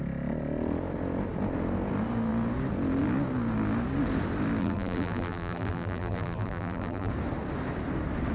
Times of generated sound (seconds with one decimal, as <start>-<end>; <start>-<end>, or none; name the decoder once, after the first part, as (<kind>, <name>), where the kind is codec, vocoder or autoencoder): 4.6-7.1 (vocoder, BigVGAN v2)

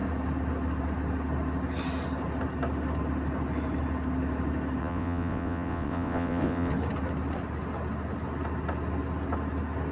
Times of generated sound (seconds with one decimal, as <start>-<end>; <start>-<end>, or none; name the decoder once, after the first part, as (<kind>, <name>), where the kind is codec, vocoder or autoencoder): 4.8-6.7 (vocoder, WaveNeXt)